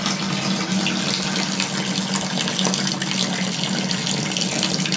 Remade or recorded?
recorded